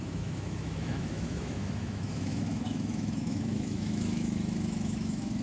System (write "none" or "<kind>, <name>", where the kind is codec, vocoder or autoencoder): autoencoder, DAC-VAE